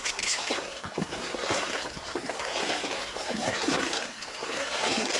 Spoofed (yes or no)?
yes